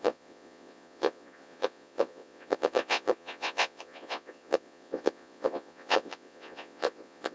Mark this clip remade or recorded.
remade